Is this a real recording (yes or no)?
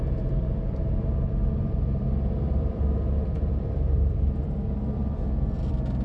no